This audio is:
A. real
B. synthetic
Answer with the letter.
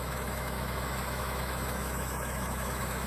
B